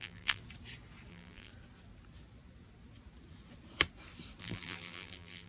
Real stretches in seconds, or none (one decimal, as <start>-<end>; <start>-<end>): 0.4-1.1; 1.5-4.4